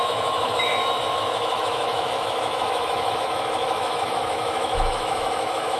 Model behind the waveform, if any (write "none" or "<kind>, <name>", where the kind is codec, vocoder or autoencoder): autoencoder, DAC-VAE